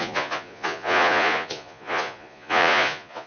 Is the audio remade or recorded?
remade